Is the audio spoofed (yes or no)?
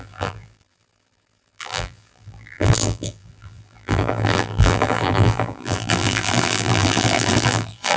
yes